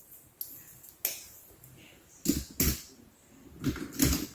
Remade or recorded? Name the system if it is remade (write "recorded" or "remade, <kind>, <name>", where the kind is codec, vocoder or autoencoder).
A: recorded